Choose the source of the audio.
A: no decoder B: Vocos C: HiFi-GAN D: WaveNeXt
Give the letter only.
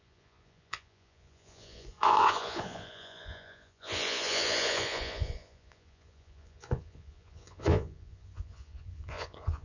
B